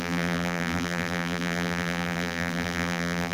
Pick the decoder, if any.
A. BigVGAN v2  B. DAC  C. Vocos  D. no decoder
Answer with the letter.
A